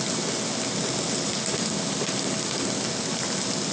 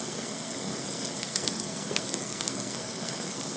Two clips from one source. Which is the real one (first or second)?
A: first